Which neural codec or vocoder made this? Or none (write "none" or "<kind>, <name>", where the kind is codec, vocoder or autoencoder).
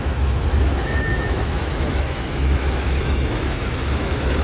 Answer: autoencoder, DAC-VAE